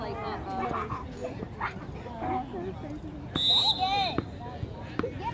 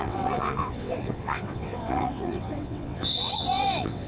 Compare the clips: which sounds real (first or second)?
first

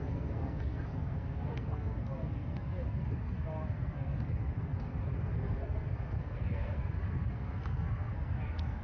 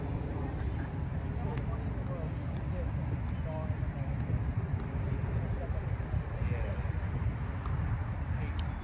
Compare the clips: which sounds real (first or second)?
second